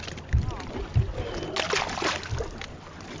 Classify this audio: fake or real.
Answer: real